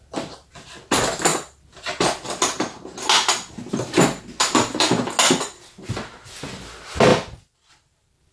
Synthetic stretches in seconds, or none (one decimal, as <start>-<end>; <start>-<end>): none